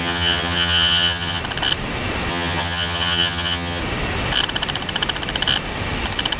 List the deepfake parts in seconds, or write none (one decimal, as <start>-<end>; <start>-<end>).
0.0-1.4; 2.3-3.8